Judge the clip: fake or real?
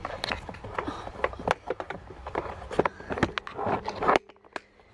real